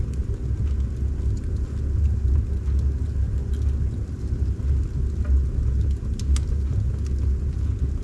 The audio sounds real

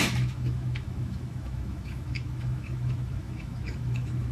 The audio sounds fake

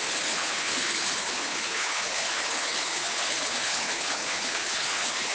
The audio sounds fake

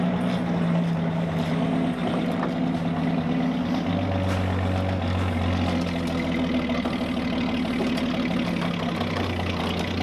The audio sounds real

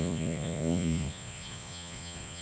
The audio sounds fake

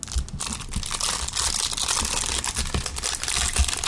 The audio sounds real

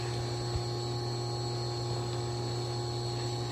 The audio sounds real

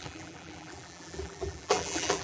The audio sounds fake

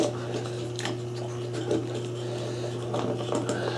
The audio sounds real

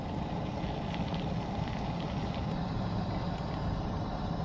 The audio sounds real